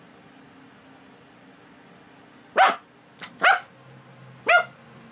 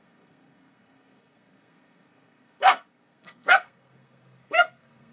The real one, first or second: first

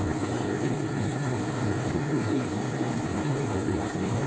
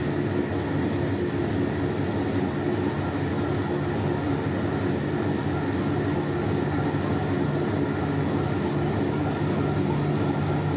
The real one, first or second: second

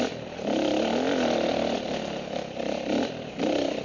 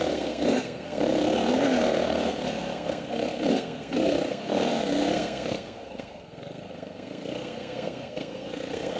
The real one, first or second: first